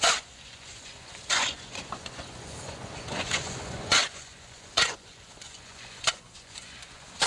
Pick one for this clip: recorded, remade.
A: remade